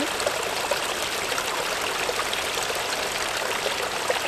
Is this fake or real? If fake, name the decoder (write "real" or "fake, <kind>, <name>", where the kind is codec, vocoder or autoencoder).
real